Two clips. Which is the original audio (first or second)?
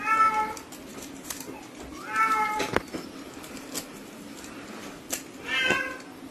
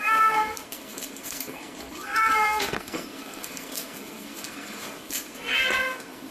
first